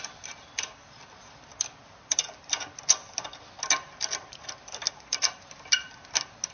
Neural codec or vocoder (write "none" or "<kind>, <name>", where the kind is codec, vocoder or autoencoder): none